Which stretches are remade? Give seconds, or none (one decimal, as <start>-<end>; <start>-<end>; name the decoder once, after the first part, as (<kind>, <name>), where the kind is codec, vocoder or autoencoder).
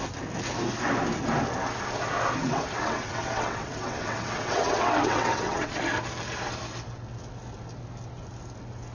2.4-5.8 (vocoder, WaveNeXt)